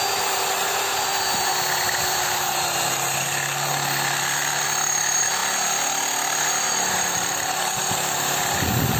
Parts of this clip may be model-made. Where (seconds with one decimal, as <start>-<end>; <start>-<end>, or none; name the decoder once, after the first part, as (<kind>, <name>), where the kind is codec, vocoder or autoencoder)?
none